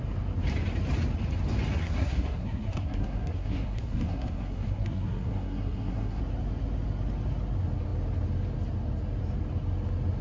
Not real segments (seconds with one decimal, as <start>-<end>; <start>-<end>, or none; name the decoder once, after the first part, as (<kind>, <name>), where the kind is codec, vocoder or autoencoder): 1.8-6.2 (codec, SNAC)